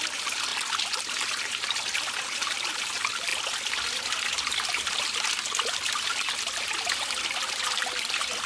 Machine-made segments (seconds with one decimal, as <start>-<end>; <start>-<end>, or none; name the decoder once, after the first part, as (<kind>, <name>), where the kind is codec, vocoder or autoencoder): none